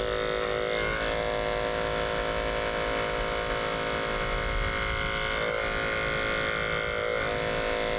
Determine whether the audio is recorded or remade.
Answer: recorded